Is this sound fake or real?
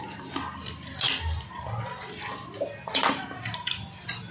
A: real